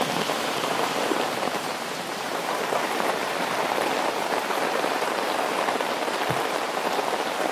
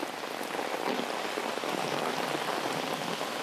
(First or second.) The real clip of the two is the second